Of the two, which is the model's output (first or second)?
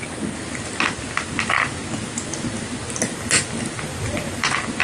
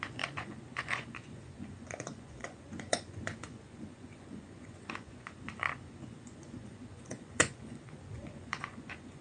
second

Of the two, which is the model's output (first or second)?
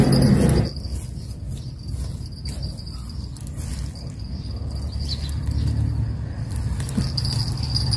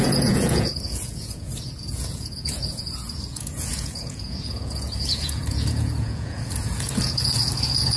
second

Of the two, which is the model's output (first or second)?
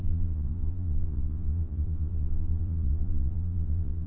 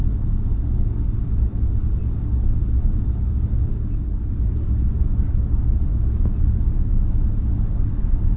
first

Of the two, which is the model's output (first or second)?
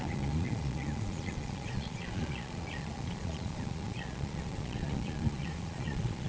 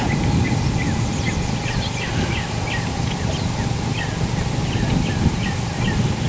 first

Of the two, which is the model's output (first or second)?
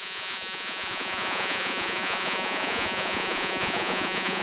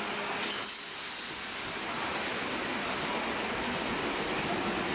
first